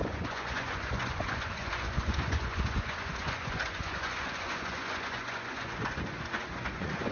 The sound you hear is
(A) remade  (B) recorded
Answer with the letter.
A